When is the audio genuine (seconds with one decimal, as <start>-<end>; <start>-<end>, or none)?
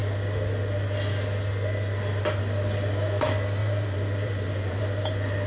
0.0-3.6; 4.8-5.5